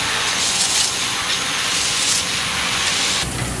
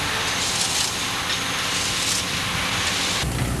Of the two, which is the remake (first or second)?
first